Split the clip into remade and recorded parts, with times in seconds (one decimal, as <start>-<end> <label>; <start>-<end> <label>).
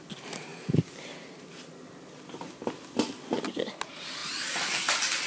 0.0-5.3 recorded